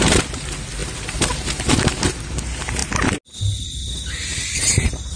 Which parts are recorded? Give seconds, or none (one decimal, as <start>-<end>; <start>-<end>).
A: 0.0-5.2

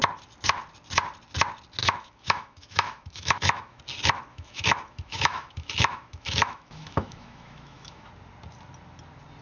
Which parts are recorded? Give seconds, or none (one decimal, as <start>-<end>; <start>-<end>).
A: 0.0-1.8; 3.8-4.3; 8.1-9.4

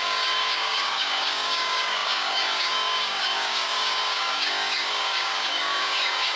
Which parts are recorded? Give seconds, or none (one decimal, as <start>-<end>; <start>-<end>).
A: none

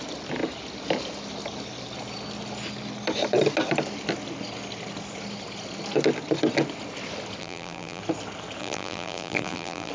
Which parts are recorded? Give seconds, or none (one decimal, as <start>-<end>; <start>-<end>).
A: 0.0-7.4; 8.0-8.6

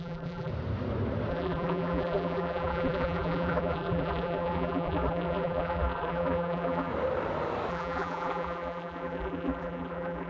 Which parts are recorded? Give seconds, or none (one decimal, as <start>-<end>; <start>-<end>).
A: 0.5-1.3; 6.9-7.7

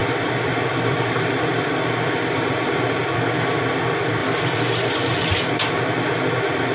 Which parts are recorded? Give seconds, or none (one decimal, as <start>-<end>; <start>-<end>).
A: 3.0-4.2; 5.5-6.7

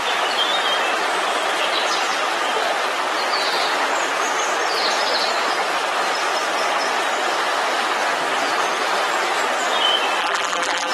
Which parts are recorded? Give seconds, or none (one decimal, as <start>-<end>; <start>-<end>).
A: 0.0-10.2

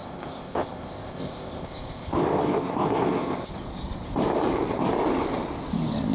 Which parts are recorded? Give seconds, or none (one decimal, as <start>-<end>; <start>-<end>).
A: 3.5-6.1